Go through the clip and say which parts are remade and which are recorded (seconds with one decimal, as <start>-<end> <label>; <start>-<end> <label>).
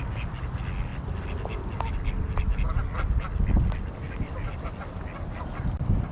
0.0-6.1 recorded